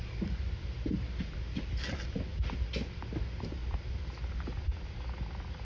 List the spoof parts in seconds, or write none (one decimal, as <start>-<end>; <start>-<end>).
none